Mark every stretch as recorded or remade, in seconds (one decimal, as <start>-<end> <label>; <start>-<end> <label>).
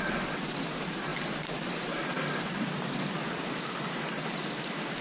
0.0-5.0 recorded